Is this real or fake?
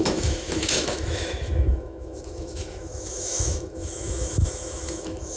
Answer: fake